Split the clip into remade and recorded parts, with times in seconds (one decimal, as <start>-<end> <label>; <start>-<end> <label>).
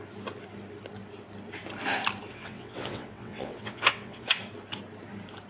0.0-2.3 recorded; 2.3-4.4 remade; 4.4-5.5 recorded